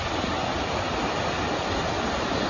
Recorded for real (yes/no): yes